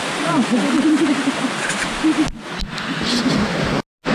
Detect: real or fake real